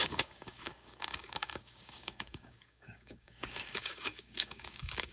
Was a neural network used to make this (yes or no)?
yes